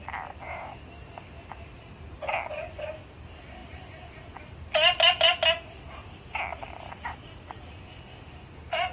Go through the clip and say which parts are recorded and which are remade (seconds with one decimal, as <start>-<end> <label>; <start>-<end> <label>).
0.0-8.9 recorded